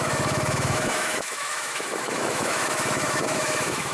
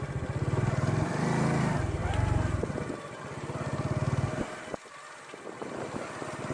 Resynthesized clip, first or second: first